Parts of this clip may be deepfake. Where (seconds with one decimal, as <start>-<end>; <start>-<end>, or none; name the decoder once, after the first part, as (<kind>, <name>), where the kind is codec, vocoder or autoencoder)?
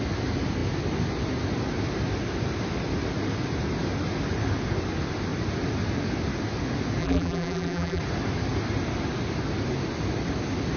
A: 7.0-8.0 (vocoder, BigVGAN v2)